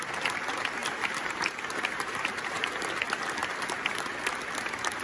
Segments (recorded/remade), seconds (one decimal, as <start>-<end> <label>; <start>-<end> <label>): 0.0-0.8 recorded; 0.8-2.7 remade; 2.7-5.0 recorded